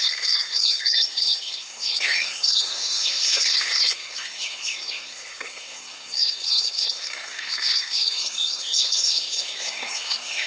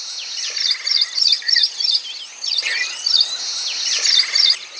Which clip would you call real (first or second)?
second